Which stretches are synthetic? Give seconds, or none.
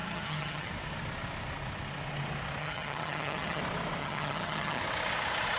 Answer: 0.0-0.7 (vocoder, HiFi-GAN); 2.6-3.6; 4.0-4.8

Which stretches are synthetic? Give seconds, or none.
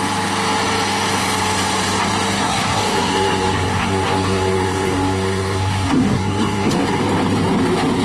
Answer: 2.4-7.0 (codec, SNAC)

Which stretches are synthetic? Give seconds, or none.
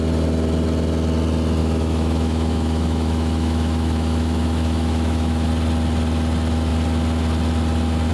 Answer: 1.6-5.5 (autoencoder, DAC-VAE)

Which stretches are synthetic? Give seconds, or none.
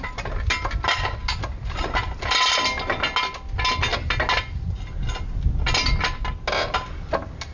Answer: none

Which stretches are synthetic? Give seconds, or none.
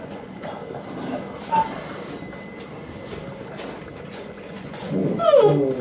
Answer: 0.0-0.6 (vocoder, Vocos); 4.1-5.0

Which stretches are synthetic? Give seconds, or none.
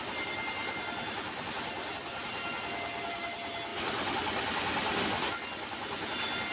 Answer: 0.6-2.2 (vocoder, BigVGAN v2); 3.7-5.0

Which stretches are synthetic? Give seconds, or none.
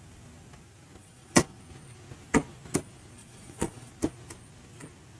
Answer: 1.0-1.6 (vocoder, Vocos); 3.2-3.9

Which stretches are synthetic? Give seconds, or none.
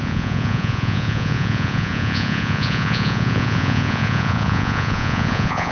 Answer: 0.0-5.7 (vocoder, Vocos)